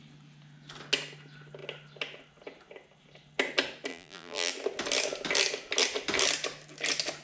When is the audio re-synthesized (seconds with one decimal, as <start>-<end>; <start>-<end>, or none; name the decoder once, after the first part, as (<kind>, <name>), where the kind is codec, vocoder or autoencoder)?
3.9-4.5 (vocoder, BigVGAN v2)